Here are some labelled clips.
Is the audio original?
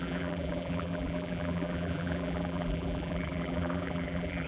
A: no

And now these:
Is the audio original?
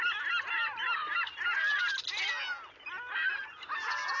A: yes